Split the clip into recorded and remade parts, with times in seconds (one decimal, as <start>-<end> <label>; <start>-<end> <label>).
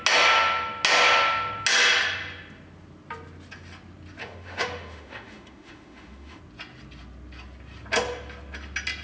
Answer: 0.0-4.2 recorded; 4.2-6.4 remade; 6.4-9.0 recorded